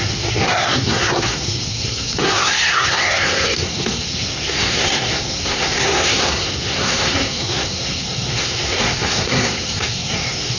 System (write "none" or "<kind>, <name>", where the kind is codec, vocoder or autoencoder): codec, SNAC